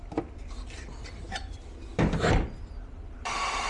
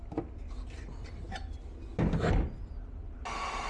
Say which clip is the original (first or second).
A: second